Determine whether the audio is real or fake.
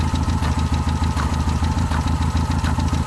real